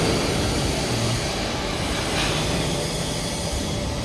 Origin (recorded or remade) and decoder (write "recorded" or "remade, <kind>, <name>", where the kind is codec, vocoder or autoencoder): recorded